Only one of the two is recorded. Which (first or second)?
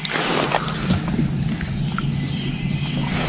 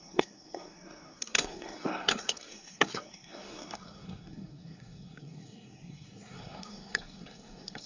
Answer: first